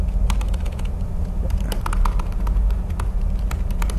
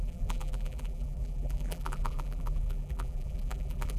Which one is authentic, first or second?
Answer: first